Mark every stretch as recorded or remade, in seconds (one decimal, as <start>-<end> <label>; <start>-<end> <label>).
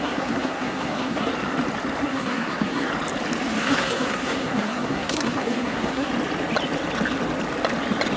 0.0-1.3 remade; 1.3-2.0 recorded; 2.0-2.9 remade; 2.9-3.6 recorded; 3.6-6.1 remade; 6.1-8.2 recorded